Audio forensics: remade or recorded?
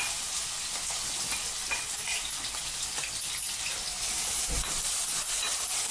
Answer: recorded